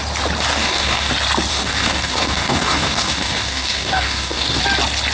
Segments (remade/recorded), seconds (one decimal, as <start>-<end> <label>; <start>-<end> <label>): 0.0-0.5 recorded; 0.5-1.1 remade; 1.1-1.5 recorded; 1.5-4.6 remade; 4.6-5.1 recorded